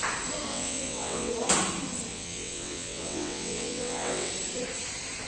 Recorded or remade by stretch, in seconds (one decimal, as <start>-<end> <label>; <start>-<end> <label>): 0.0-0.5 recorded; 0.5-1.3 remade; 1.3-2.1 recorded; 2.1-4.3 remade; 4.3-5.3 recorded